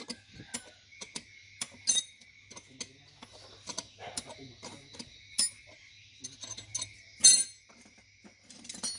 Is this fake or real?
real